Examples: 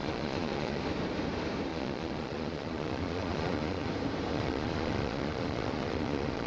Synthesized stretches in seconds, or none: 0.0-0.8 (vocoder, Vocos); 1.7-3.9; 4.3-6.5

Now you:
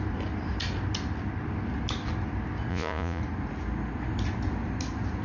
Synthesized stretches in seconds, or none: 2.7-3.2 (vocoder, Vocos)

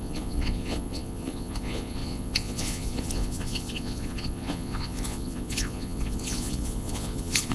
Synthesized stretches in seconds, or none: 0.0-7.5 (vocoder, Vocos)